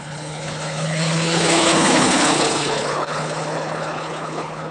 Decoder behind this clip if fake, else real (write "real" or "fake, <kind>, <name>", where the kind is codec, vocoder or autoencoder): fake, codec, HILCodec